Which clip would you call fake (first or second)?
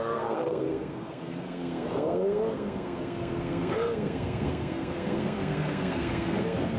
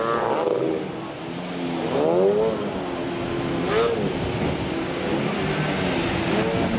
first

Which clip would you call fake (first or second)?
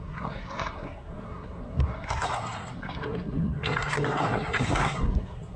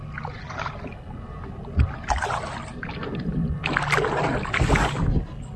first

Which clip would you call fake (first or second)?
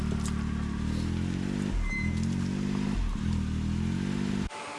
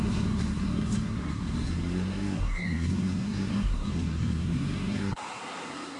second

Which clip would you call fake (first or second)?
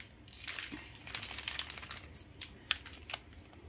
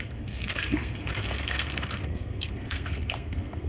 second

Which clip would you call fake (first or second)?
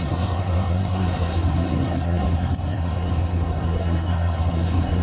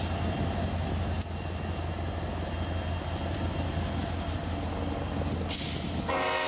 first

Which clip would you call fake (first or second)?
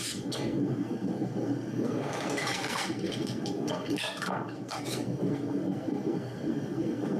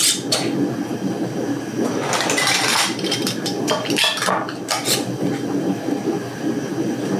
first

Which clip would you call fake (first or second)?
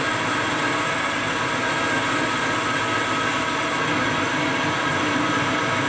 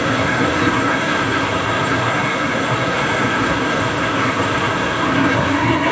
second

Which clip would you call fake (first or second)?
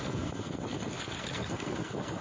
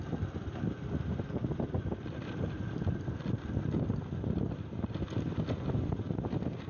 first